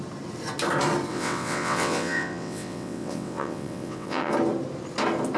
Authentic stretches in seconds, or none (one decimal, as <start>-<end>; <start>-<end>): 0.0-1.1; 4.3-5.4